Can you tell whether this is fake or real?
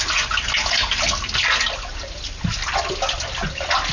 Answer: real